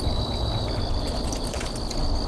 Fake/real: real